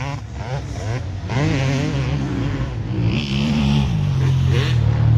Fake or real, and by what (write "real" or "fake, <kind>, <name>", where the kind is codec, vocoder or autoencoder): real